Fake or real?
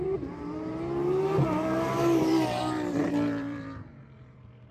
fake